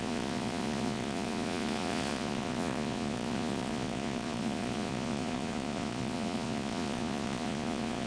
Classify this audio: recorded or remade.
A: remade